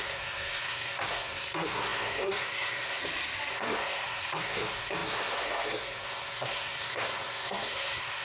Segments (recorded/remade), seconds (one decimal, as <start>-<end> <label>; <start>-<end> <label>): 0.0-3.0 remade; 3.0-3.5 recorded; 3.5-8.2 remade

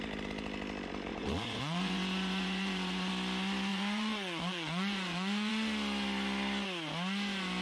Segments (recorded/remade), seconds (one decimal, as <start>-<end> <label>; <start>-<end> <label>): 0.0-1.1 recorded; 1.1-3.1 remade; 3.1-3.7 recorded; 3.7-5.5 remade; 5.5-7.6 recorded

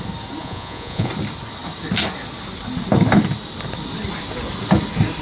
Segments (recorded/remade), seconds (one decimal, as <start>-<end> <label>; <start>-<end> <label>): 0.0-0.4 recorded; 0.4-1.1 remade; 1.1-5.2 recorded

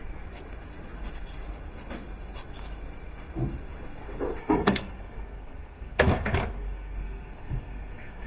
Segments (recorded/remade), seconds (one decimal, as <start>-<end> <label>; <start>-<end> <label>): 0.0-4.4 recorded; 4.4-8.3 remade